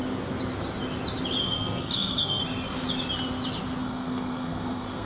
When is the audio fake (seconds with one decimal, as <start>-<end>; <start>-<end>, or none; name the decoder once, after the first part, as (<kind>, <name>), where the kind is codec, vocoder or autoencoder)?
1.4-2.4 (codec, SNAC); 3.8-5.1